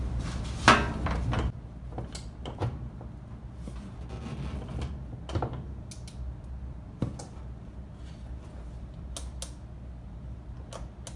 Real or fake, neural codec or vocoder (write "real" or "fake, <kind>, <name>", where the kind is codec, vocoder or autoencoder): real